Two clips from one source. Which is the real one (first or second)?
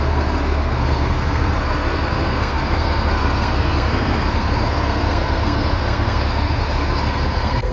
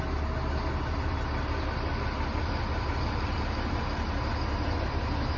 second